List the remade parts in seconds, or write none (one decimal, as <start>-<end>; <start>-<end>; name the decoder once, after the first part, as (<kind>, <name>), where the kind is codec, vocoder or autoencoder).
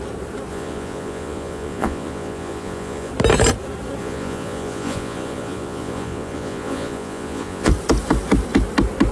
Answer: 0.5-3.1 (vocoder, Vocos); 4.0-7.7